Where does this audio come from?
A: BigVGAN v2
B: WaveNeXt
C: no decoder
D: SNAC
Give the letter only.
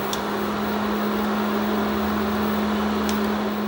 C